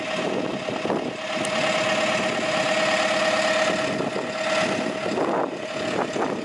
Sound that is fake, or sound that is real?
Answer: real